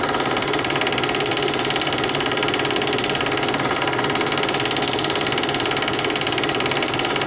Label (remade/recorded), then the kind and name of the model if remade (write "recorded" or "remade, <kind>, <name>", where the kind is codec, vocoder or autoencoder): recorded